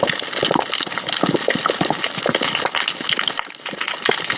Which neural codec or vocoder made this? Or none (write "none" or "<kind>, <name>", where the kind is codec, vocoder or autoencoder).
none